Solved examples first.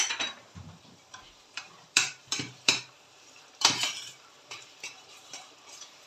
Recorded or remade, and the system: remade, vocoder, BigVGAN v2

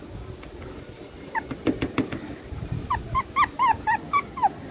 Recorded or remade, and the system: recorded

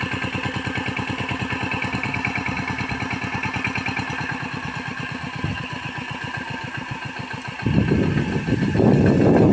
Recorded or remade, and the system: recorded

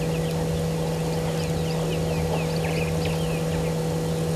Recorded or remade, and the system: recorded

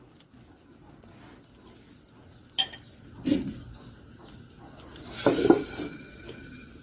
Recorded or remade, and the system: recorded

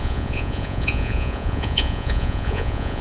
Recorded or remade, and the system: remade, vocoder, Vocos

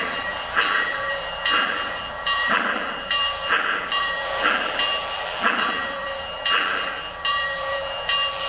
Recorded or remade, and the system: remade, vocoder, BigVGAN v2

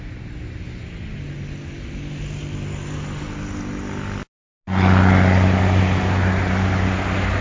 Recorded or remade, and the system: recorded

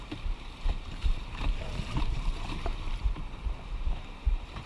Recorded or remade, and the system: remade, vocoder, BigVGAN v2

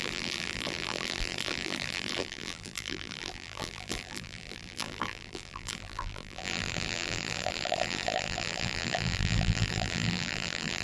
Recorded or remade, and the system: remade, vocoder, BigVGAN v2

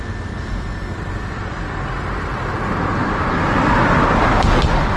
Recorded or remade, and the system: recorded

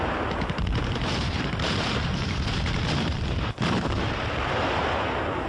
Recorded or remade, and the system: remade, vocoder, BigVGAN v2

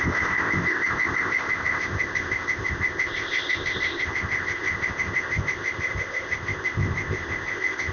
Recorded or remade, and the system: remade, codec, ZipCodec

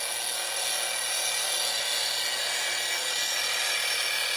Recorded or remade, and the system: recorded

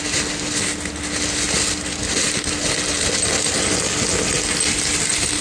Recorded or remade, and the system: recorded